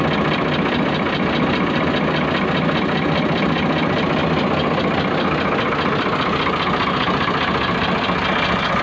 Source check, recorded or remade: recorded